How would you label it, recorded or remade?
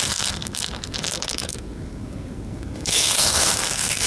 remade